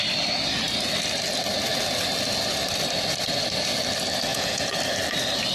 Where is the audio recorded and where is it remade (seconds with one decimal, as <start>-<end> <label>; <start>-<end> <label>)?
0.0-4.3 recorded; 4.3-4.8 remade; 4.8-5.5 recorded